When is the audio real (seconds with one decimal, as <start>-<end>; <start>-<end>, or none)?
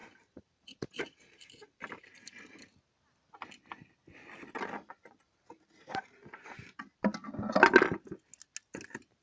2.6-5.0; 6.8-9.2